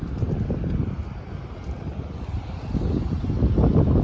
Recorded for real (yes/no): yes